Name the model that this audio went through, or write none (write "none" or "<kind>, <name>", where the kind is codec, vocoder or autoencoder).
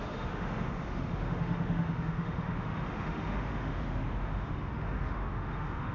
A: autoencoder, DAC-VAE